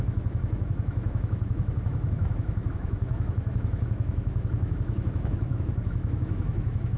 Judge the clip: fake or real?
fake